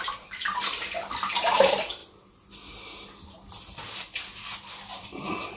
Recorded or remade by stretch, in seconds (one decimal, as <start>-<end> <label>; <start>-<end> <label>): 0.0-0.4 remade; 0.4-1.3 recorded; 1.3-2.0 remade; 2.0-5.6 recorded